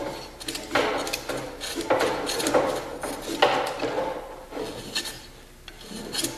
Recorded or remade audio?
recorded